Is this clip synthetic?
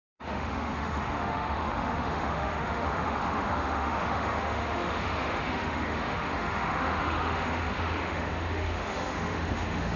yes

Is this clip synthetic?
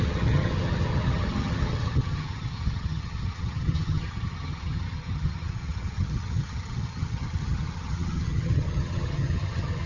yes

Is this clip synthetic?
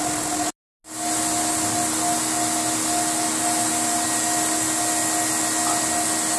no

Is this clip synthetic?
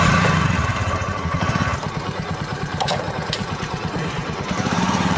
yes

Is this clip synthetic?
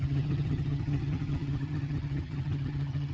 yes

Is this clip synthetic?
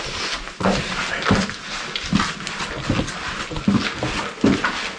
no